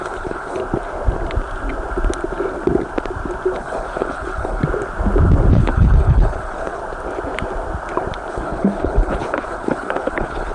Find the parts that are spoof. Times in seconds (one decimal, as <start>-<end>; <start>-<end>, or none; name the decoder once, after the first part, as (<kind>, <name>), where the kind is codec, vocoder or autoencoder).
0.0-0.6 (codec, HILCodec); 3.6-4.6; 5.5-6.8; 8.3-10.5